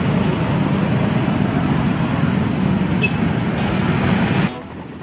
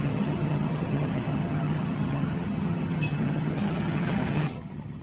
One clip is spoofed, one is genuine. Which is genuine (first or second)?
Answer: first